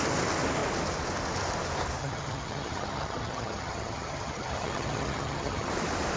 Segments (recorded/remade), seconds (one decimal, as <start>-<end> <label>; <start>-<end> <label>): 0.0-2.0 recorded; 2.0-5.7 remade; 5.7-6.2 recorded